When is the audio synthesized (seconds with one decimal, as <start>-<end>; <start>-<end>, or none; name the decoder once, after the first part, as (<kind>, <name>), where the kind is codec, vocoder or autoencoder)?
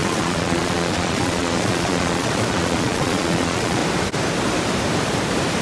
0.0-3.8 (vocoder, Vocos)